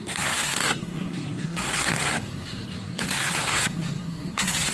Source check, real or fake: fake